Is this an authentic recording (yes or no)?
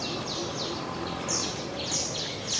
yes